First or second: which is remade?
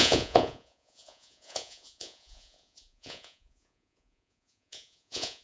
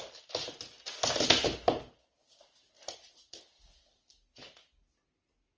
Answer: first